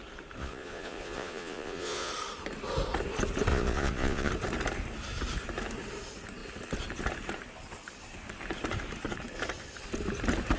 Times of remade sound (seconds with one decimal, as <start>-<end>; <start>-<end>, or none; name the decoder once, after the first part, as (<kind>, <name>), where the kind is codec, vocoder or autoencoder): 0.4-2.1 (vocoder, Vocos); 3.5-4.3